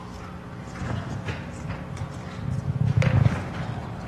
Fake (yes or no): no